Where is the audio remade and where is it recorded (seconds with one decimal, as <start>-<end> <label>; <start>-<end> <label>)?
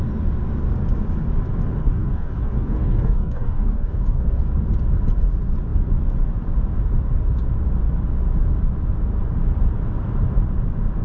0.0-1.8 recorded; 1.8-4.4 remade; 4.4-11.0 recorded